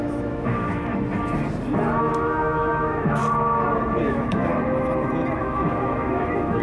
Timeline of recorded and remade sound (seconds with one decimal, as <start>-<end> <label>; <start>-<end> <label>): 0.0-0.9 remade; 0.9-2.0 recorded; 2.0-3.2 remade; 3.2-4.0 recorded; 4.0-4.5 remade; 4.5-5.4 recorded; 5.4-6.6 remade